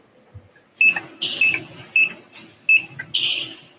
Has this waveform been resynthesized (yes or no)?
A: no